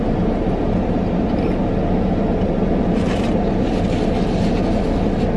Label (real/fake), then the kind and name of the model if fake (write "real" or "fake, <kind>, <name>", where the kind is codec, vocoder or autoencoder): real